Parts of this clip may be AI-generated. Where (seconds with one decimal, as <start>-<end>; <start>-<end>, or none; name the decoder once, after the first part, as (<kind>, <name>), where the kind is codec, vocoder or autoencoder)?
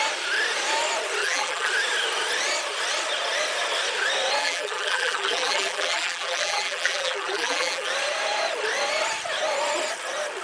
1.2-1.7 (vocoder, BigVGAN v2); 4.4-7.9